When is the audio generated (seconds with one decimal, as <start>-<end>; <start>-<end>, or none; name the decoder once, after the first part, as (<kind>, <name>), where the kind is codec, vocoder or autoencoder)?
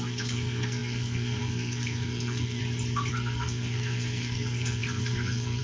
0.0-2.6 (codec, SNAC); 3.1-5.6